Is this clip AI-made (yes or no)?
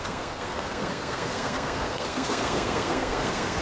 yes